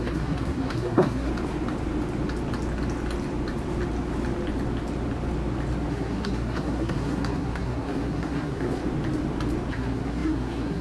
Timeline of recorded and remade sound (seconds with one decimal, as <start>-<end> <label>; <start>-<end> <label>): 0.0-1.3 remade; 1.3-5.9 recorded; 5.9-8.8 remade; 8.8-9.7 recorded; 9.7-10.8 remade